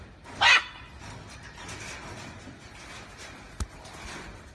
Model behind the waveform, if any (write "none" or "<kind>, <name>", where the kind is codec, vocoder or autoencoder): none